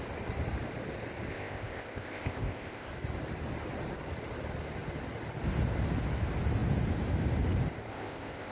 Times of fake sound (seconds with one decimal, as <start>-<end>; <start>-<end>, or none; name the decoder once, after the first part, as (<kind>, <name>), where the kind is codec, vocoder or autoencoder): 1.3-2.9 (codec, ZipCodec); 7.9-8.5